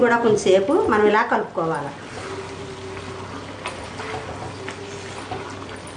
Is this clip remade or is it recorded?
recorded